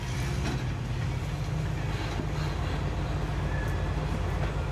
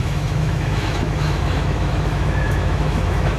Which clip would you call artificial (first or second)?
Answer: second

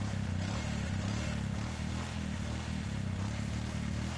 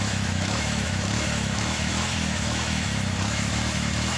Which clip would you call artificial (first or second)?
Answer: second